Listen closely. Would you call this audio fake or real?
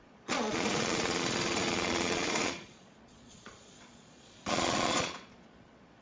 fake